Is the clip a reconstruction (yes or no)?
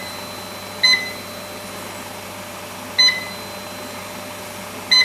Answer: no